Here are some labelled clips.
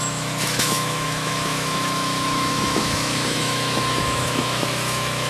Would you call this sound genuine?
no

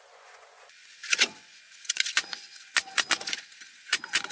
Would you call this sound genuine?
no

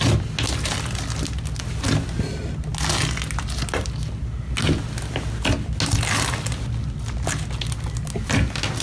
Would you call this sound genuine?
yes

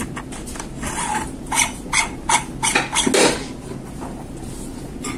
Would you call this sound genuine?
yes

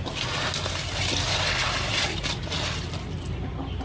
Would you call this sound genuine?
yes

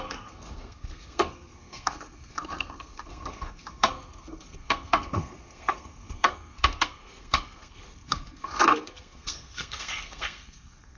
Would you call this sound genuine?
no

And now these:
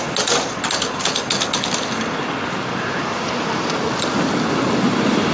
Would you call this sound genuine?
yes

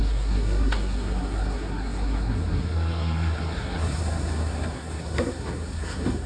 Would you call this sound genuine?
no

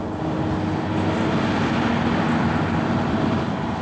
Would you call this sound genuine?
yes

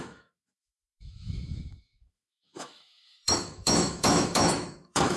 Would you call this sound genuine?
no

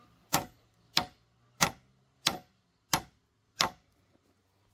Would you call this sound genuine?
yes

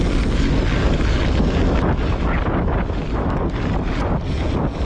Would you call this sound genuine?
yes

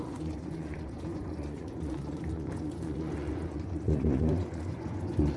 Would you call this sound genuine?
no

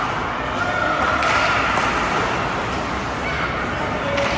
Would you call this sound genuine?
yes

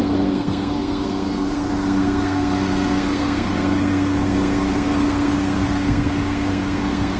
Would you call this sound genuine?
no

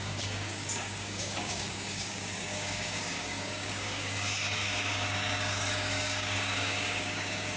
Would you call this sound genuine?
no